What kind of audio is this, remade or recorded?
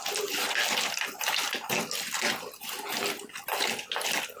recorded